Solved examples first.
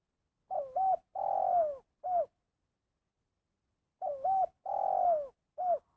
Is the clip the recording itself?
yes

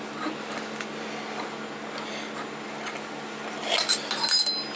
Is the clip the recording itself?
yes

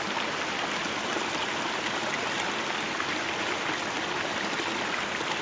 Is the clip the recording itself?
yes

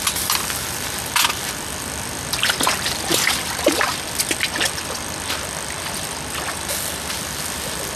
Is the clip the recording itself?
yes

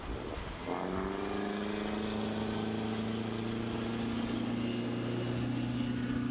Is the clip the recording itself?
yes